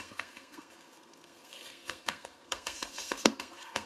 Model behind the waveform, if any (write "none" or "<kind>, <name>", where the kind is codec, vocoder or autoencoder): codec, SNAC